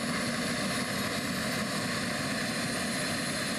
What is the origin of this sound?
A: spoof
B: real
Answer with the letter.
B